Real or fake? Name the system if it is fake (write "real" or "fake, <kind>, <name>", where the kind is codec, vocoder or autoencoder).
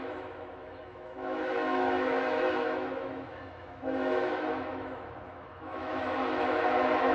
fake, autoencoder, DAC-VAE